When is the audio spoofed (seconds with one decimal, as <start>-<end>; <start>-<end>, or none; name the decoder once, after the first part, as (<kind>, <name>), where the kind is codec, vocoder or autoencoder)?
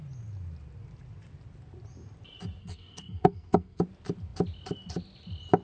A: 2.6-3.8 (codec, SNAC)